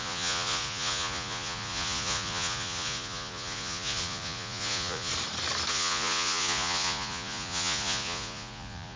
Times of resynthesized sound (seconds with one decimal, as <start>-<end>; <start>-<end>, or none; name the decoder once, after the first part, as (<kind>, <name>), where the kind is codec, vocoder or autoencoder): 0.0-5.1 (vocoder, Vocos); 5.7-9.0

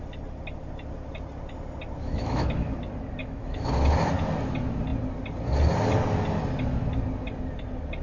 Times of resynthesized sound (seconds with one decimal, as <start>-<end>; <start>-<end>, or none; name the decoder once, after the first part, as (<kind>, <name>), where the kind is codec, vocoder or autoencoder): 2.0-2.8 (autoencoder, DAC-VAE); 3.2-3.7

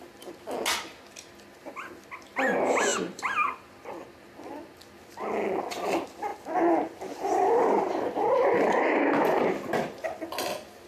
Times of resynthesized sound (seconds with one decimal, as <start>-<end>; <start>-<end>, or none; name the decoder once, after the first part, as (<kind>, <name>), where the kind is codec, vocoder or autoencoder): none